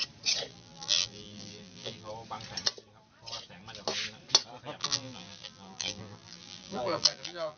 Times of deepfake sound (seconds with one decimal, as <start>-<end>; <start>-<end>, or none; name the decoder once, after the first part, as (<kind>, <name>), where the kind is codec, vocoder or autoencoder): 0.5-2.1 (vocoder, BigVGAN v2); 4.8-7.6